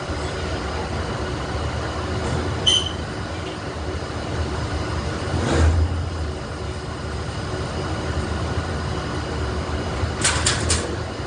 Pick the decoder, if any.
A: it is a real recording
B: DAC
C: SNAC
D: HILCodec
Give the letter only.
A